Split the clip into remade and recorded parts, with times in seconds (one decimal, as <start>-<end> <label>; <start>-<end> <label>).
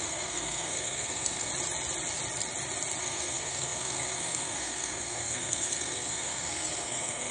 0.0-1.5 remade; 1.5-3.0 recorded; 3.0-7.3 remade